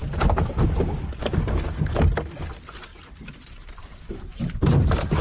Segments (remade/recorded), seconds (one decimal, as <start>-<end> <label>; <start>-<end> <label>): 0.0-2.9 recorded; 2.9-5.2 remade

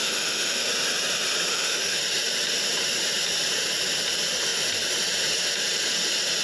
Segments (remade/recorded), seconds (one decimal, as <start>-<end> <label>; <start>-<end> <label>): 0.0-0.7 remade; 0.7-1.5 recorded; 1.5-2.0 remade; 2.0-6.4 recorded

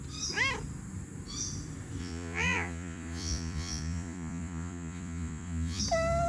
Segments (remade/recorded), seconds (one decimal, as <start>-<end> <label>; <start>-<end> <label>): 0.0-2.0 recorded; 2.0-5.8 remade; 5.8-6.3 recorded

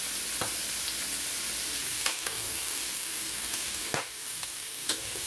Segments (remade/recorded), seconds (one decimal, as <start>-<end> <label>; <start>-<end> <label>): 0.0-1.8 recorded; 1.8-5.3 remade

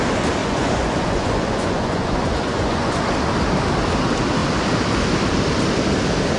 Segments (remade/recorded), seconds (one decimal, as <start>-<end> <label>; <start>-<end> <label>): 0.0-0.4 recorded; 0.4-3.0 remade; 3.0-6.4 recorded